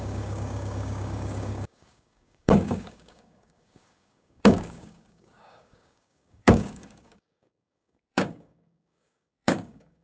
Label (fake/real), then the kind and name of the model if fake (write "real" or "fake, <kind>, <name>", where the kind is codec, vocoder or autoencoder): fake, codec, DAC